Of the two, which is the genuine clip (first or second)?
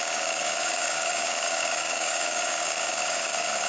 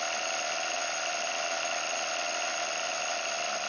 second